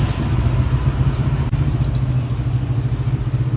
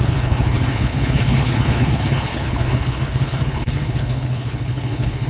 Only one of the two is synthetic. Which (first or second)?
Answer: second